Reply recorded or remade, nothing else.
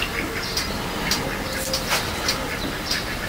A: recorded